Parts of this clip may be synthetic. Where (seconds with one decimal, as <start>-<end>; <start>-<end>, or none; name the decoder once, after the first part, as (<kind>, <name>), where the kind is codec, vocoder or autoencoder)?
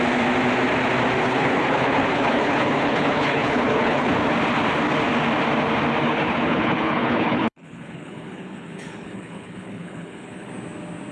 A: 1.2-4.1 (codec, HILCodec); 6.0-10.5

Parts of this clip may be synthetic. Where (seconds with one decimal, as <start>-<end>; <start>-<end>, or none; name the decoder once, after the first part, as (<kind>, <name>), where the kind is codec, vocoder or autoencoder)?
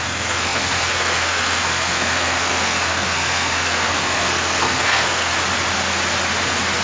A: 0.0-5.3 (codec, SNAC)